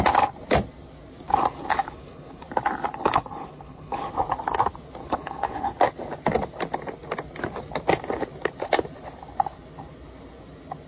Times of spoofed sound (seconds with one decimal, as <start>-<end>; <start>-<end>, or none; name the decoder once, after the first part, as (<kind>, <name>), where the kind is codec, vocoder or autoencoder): 1.7-2.4 (codec, HILCodec); 2.9-4.1; 5.0-5.7